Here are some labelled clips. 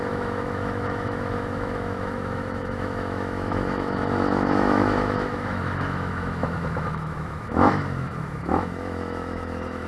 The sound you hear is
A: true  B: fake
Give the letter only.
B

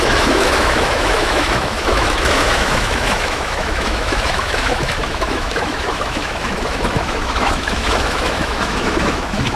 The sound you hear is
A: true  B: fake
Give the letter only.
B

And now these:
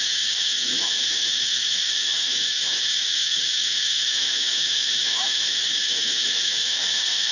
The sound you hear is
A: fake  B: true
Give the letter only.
A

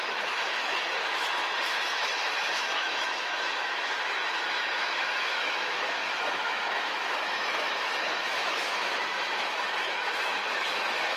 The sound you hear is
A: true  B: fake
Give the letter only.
B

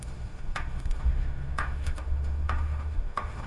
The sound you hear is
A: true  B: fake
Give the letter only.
B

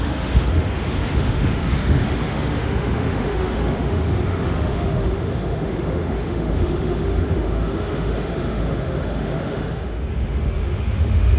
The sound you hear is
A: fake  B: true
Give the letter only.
A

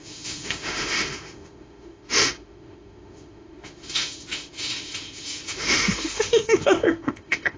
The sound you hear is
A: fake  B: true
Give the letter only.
A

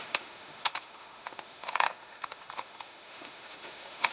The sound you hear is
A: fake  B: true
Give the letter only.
A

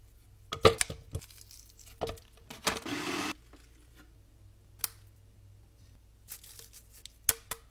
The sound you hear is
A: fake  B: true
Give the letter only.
B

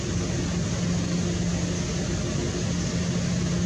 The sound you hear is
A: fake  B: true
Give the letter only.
B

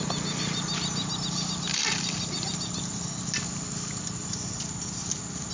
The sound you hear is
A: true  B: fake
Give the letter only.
A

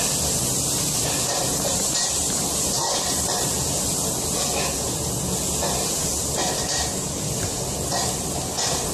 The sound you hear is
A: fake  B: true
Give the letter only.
B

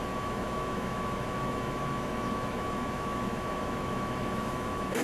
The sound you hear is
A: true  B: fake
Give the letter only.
B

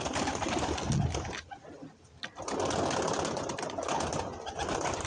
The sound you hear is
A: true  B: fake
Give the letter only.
A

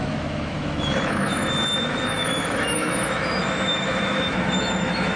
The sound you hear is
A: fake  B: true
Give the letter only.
A